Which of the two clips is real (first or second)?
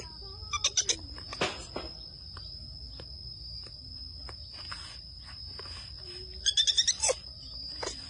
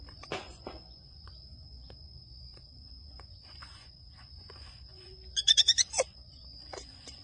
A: first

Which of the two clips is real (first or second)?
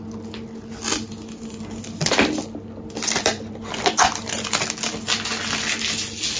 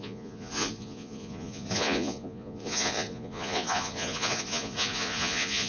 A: first